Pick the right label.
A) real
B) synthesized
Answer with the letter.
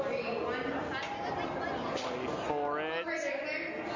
A